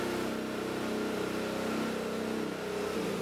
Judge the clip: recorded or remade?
recorded